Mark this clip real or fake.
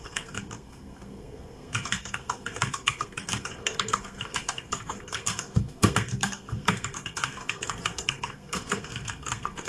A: fake